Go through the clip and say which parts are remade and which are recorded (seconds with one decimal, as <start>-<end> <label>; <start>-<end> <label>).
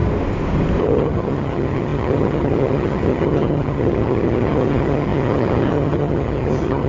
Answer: 0.0-0.8 recorded; 0.8-6.9 remade